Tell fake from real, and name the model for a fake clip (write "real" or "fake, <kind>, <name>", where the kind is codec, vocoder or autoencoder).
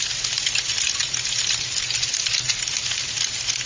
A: real